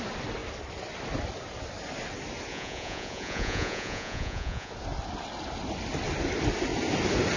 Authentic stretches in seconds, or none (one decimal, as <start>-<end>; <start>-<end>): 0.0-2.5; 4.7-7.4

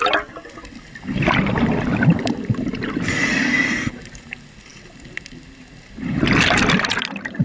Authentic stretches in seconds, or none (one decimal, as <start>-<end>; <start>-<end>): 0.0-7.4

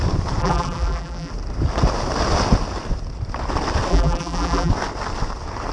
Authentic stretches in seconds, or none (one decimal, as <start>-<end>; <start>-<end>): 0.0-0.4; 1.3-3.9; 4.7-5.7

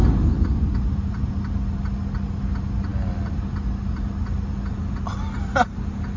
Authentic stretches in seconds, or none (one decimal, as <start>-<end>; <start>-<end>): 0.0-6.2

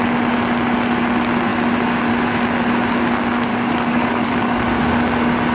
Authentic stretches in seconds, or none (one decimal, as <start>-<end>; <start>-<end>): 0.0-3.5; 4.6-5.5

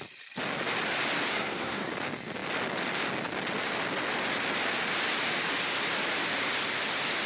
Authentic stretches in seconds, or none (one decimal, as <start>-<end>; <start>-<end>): 0.0-1.3; 1.9-7.3